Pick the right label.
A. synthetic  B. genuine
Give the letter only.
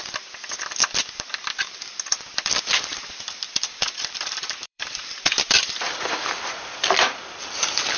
A